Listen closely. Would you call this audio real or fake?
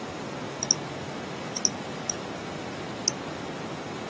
real